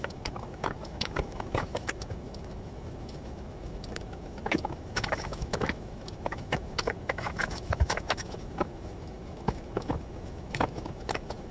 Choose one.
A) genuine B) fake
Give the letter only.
B